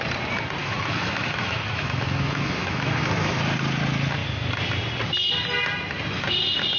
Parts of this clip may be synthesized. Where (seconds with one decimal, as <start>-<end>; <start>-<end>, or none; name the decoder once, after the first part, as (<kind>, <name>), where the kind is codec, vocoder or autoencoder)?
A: 0.6-3.4 (autoencoder, DAC-VAE)